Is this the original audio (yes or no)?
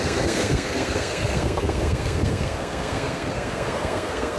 no